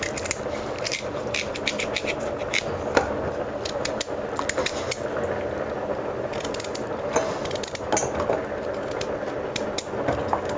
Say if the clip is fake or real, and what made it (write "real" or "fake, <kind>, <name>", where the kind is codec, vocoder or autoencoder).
real